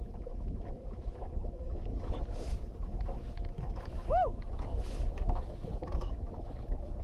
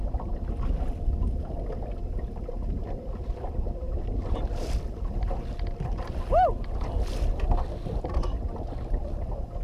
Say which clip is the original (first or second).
second